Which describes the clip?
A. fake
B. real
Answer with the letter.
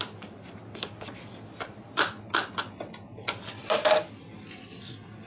A